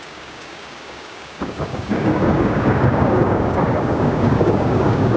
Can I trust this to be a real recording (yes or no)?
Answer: no